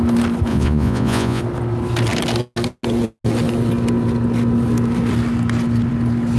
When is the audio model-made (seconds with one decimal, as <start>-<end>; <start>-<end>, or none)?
0.5-1.4